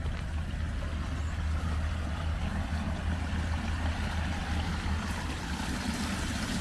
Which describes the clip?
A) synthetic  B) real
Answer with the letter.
B